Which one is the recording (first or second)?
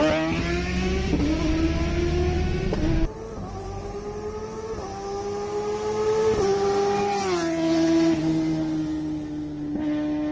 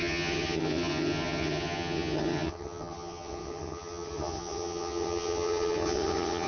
first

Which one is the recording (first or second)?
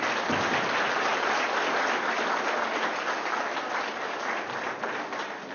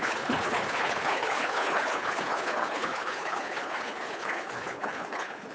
first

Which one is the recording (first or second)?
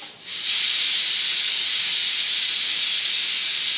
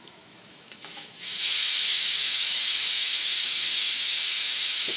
first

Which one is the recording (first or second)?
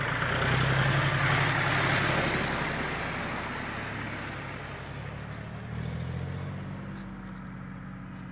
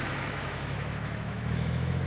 first